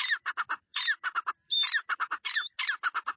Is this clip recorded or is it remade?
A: recorded